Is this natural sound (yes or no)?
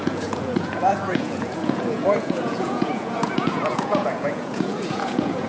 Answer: no